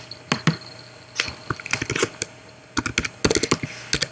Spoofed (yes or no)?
no